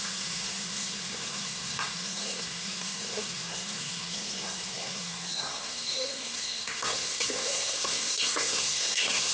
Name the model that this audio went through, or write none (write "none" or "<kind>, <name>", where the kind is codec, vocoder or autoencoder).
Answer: codec, SNAC